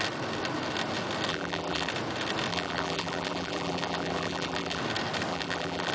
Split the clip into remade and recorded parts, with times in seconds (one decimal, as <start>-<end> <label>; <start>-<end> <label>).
0.0-1.3 recorded; 1.3-1.9 remade; 1.9-2.5 recorded; 2.5-4.8 remade; 4.8-5.3 recorded; 5.3-5.9 remade